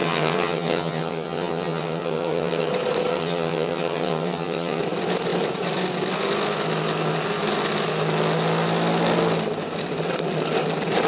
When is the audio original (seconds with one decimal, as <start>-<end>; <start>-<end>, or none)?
2.7-3.1; 4.8-11.1